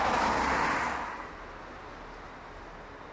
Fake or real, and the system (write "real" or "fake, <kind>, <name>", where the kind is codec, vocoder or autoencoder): real